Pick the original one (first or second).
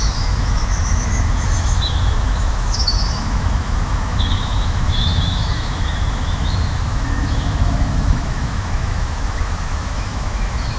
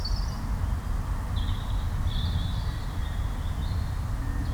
second